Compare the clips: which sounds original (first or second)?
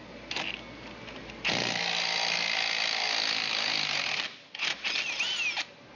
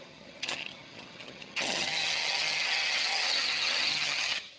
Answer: first